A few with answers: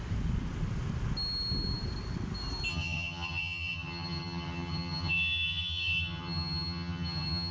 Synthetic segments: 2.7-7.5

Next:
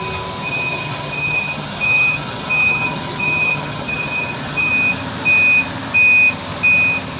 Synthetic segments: 0.4-4.7

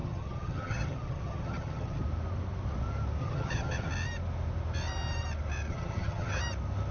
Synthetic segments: 0.0-2.0; 3.2-3.9; 5.7-6.4

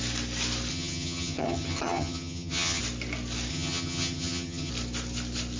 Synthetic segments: 0.7-2.8; 3.5-4.7

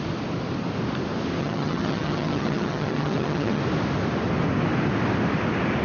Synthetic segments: 1.4-3.6

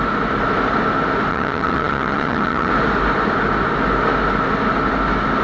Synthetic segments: 1.3-2.7